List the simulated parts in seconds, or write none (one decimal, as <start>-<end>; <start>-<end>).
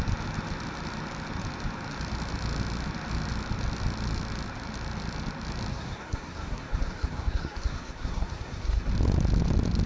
5.7-8.9